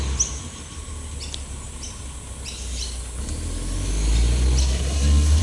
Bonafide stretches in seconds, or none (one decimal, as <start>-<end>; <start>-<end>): 0.0-4.6